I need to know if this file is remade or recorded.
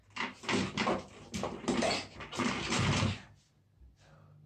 recorded